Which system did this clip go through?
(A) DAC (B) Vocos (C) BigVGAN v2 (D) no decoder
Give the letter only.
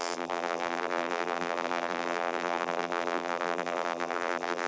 C